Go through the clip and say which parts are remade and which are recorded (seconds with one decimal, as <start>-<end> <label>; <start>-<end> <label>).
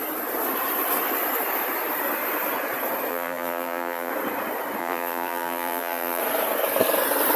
0.0-3.1 recorded; 3.1-4.1 remade; 4.1-4.8 recorded; 4.8-6.2 remade; 6.2-7.4 recorded